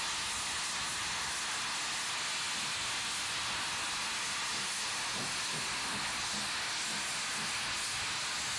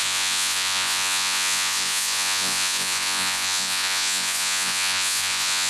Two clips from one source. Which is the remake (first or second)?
second